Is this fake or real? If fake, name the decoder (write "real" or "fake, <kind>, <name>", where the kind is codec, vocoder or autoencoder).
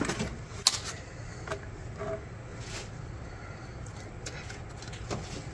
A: real